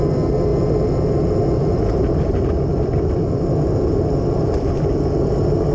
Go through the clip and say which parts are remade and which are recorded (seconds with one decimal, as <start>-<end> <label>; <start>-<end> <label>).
0.0-5.7 recorded